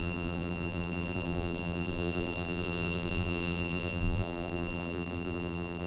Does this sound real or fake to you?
fake